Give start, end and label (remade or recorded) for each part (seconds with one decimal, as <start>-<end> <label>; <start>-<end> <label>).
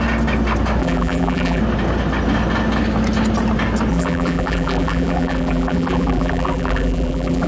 0.0-0.8 recorded; 0.8-1.6 remade; 1.6-3.9 recorded; 3.9-7.5 remade